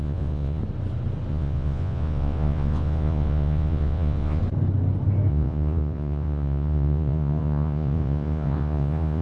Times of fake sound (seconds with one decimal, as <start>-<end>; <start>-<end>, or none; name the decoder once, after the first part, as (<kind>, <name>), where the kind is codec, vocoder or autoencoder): 0.0-0.6 (vocoder, Vocos); 1.3-4.4; 5.3-9.2